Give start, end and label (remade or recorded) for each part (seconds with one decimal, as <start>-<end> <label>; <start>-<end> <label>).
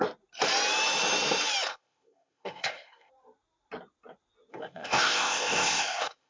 0.0-1.7 recorded; 1.7-3.1 remade; 3.1-4.5 recorded; 4.5-6.3 remade